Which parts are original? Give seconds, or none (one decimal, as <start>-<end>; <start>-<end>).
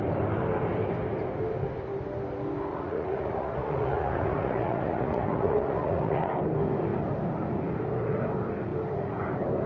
0.0-2.7; 6.3-9.7